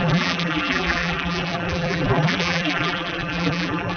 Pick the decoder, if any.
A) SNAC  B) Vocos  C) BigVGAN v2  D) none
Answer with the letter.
C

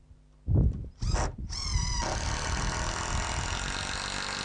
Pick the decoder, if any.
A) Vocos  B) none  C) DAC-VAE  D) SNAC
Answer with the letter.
B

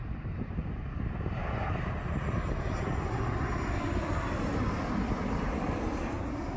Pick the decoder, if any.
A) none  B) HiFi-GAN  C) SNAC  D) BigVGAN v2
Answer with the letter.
A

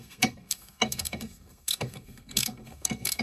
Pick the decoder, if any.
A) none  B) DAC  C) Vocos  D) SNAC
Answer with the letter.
D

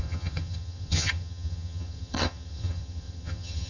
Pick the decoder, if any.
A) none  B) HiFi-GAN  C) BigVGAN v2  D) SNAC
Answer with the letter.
B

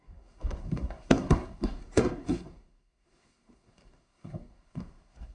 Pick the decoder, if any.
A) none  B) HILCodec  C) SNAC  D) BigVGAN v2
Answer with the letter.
C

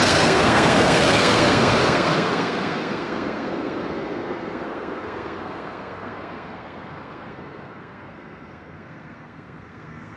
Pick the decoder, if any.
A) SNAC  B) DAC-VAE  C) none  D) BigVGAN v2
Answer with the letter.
A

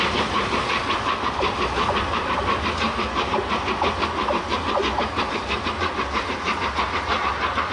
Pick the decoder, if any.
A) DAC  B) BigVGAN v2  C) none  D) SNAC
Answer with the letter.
C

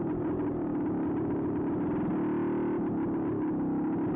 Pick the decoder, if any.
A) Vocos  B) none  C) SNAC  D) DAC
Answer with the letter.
B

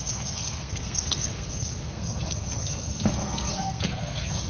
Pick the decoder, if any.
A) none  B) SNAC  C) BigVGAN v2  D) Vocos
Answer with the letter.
B